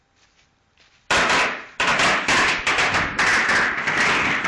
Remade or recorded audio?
recorded